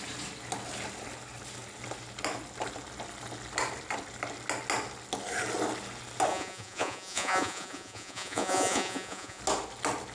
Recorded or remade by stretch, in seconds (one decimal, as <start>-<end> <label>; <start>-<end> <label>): 0.0-6.3 recorded; 6.3-9.4 remade; 9.4-10.1 recorded